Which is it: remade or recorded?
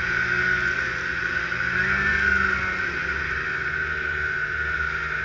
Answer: recorded